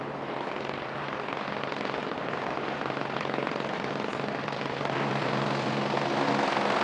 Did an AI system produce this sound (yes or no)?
no